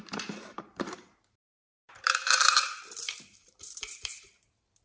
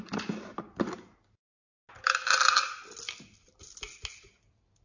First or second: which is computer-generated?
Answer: first